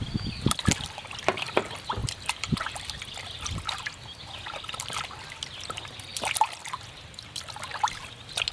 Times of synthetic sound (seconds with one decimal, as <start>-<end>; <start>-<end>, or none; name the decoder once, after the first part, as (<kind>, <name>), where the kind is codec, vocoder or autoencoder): 2.0-5.2 (vocoder, BigVGAN v2)